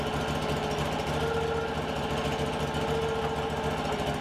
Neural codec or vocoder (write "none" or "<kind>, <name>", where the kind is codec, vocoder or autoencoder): none